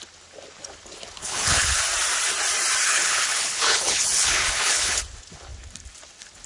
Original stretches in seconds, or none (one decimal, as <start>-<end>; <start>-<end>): 0.0-1.2; 1.8-2.8; 5.0-6.5